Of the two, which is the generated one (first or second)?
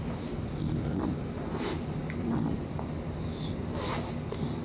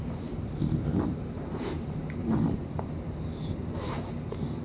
second